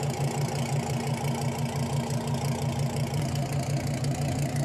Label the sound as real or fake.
real